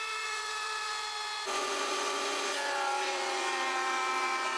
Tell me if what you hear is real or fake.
fake